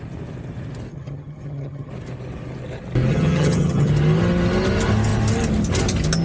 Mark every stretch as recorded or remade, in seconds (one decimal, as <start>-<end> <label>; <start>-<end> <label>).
0.0-0.9 recorded; 0.9-1.9 remade; 1.9-3.1 recorded; 3.1-3.9 remade; 3.9-6.2 recorded